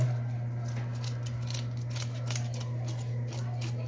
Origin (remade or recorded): recorded